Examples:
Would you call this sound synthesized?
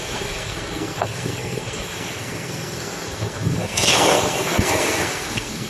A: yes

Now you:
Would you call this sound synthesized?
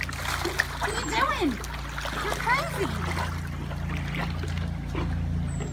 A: no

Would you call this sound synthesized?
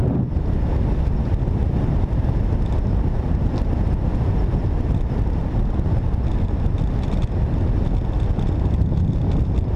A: no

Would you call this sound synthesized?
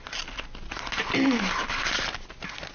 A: no